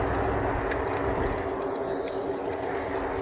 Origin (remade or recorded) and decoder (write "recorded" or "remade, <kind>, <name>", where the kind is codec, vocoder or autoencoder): recorded